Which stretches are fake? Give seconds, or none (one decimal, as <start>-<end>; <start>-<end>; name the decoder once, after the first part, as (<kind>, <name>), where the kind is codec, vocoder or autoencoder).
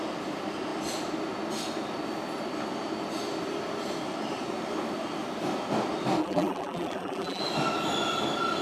6.2-7.4 (vocoder, BigVGAN v2)